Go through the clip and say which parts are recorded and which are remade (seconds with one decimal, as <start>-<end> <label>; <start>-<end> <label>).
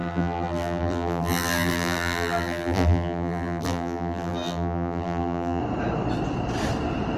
0.0-5.6 remade; 5.6-7.2 recorded